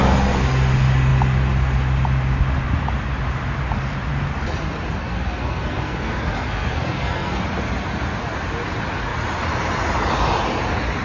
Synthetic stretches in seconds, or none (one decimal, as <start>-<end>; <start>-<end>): 5.0-7.4